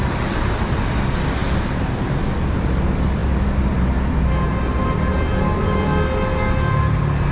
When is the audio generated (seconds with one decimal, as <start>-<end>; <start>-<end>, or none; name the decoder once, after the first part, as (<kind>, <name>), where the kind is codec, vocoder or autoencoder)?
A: none

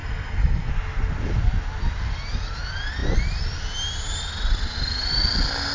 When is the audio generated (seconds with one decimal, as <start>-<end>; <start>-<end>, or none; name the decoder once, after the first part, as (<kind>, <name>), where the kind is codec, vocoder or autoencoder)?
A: 0.0-0.7 (codec, SNAC)

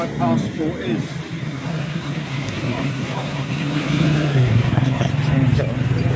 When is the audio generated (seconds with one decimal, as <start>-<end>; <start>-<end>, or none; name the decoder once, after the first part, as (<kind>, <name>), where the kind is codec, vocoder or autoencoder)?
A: 1.4-5.1 (codec, SNAC)